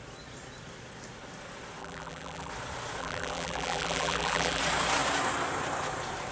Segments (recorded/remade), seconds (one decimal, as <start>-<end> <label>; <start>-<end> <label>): 0.0-1.8 recorded; 1.8-2.5 remade; 2.5-3.0 recorded; 3.0-4.6 remade; 4.6-6.3 recorded